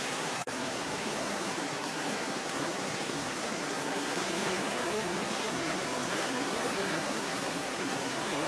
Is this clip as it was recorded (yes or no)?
no